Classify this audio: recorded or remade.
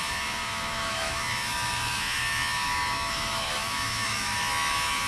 remade